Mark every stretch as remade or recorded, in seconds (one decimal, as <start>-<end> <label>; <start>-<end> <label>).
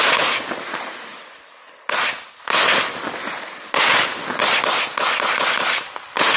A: 0.0-6.4 recorded